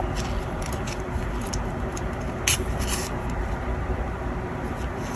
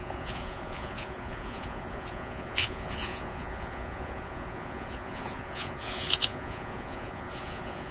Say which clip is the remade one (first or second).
second